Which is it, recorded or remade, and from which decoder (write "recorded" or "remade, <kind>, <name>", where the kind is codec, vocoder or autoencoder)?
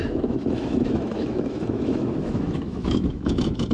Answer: remade, autoencoder, DAC-VAE